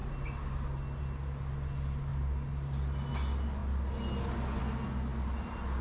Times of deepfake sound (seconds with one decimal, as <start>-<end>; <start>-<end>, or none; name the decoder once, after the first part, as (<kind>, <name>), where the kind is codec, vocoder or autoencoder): none